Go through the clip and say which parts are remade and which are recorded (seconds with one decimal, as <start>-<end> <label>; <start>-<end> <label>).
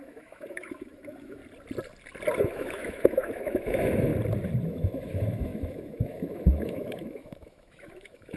0.0-1.4 remade; 1.4-2.4 recorded; 2.4-4.1 remade; 4.1-4.7 recorded; 4.7-8.4 remade